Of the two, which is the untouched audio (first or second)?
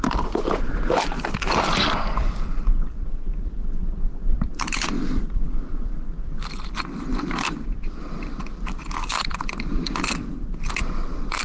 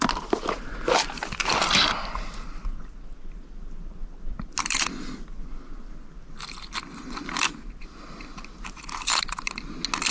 second